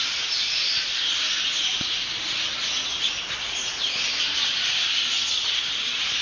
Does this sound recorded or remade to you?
recorded